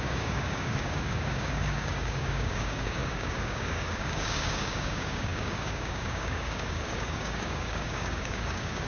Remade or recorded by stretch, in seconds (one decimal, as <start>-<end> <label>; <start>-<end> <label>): 0.0-8.9 remade